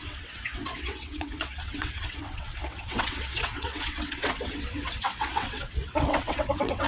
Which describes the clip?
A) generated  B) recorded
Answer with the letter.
A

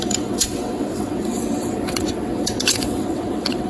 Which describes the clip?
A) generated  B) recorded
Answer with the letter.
A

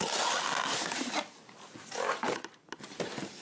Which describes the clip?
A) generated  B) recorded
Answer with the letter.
B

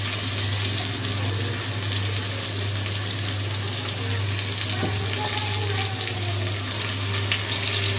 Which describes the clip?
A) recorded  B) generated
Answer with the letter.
A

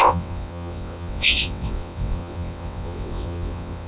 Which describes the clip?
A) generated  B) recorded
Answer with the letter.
A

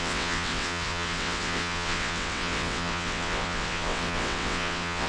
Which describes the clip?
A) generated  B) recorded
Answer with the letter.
A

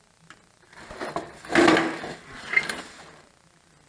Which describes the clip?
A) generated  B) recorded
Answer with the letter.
B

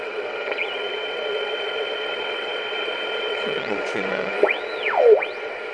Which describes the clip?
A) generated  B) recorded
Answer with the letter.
A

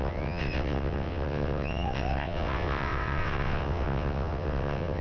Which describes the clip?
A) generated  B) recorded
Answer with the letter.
A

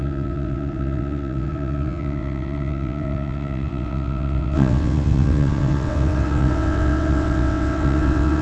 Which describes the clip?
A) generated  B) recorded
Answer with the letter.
A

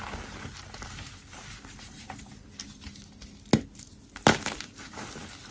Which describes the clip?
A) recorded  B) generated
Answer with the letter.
A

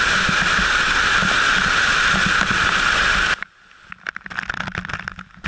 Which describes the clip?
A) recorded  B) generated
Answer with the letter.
A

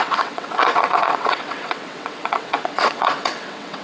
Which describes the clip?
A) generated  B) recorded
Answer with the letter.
A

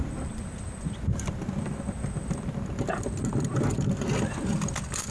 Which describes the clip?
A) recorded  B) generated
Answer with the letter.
A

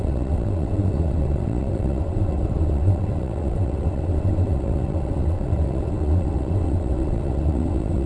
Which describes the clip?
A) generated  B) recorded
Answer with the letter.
A